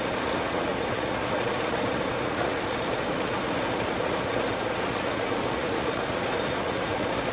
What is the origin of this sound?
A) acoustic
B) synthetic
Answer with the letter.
B